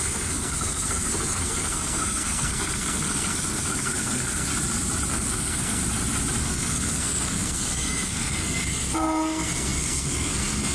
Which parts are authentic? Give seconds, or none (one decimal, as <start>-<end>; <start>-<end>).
4.5-5.1; 5.8-6.4